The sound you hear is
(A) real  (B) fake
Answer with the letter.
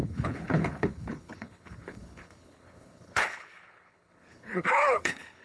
B